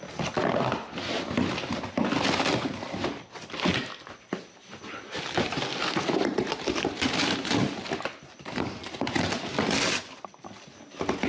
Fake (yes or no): no